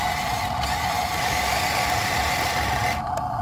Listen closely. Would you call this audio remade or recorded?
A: recorded